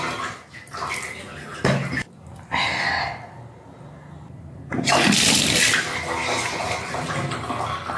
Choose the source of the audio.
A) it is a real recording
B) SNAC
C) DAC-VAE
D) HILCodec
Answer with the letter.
A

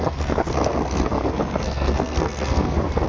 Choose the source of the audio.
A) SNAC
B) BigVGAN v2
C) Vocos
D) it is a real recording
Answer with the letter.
A